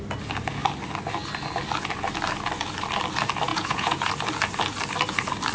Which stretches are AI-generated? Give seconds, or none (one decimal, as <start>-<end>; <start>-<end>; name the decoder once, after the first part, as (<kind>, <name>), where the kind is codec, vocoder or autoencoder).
3.5-4.1 (vocoder, Vocos)